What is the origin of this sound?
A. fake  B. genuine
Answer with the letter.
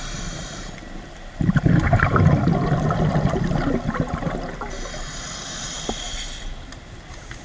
B